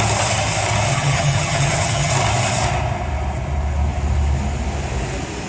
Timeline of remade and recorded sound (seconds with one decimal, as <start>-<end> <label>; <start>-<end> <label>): 0.0-0.9 recorded; 0.9-2.1 remade; 2.1-5.5 recorded